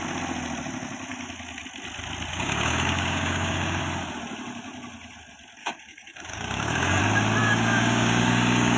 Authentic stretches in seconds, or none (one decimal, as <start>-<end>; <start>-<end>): 0.0-2.3; 3.8-5.6; 7.0-7.4

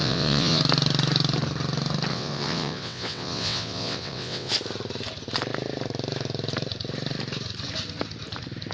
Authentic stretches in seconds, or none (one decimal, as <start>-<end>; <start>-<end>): 0.6-2.1; 4.5-8.7